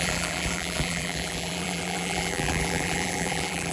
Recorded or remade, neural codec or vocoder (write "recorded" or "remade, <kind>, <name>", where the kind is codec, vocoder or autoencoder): remade, vocoder, BigVGAN v2